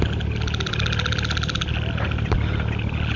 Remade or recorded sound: recorded